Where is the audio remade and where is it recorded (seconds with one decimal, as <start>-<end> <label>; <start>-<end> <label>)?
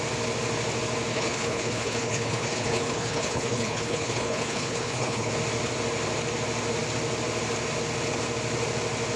0.0-1.1 recorded; 1.1-5.3 remade; 5.3-9.2 recorded